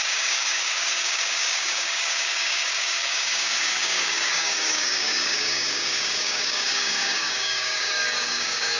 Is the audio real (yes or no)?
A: no